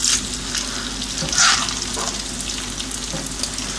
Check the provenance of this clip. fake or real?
real